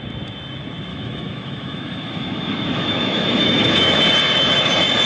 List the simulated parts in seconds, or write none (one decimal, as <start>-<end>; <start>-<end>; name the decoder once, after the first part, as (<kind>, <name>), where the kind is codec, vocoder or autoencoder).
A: 0.9-4.0 (autoencoder, DAC-VAE)